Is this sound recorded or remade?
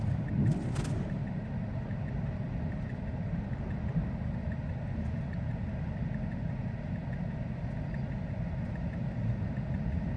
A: recorded